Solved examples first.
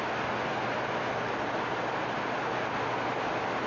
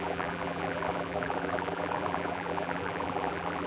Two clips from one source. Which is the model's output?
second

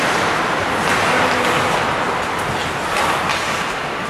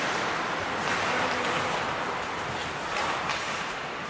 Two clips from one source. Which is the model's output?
second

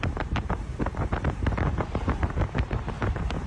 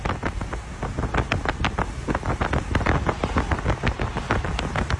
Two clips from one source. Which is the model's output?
first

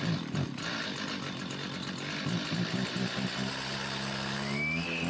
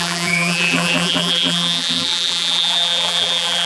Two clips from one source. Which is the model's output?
second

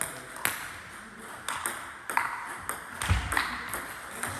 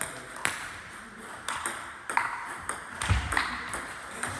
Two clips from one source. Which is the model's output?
second